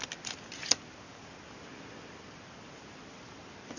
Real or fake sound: real